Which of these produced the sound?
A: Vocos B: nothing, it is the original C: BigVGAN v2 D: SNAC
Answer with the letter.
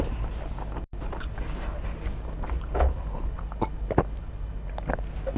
B